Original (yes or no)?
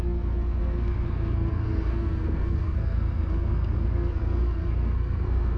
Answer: no